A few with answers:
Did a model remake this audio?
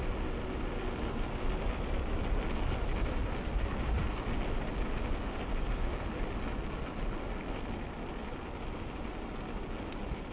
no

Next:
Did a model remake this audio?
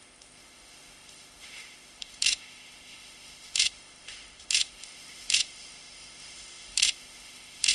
yes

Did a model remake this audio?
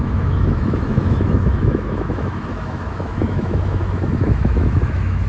yes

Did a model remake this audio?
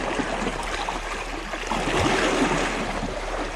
no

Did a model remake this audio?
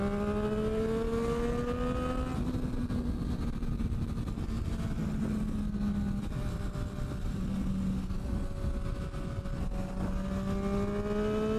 no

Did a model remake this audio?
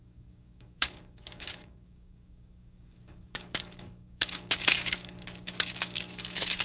yes